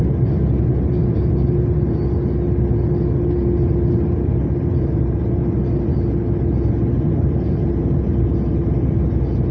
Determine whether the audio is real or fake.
real